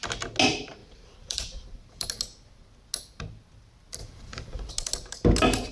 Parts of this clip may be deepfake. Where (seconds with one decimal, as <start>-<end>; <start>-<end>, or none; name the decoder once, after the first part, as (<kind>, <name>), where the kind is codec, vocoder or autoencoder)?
0.8-2.1 (vocoder, BigVGAN v2); 4.0-4.7